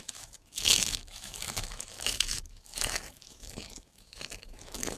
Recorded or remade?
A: remade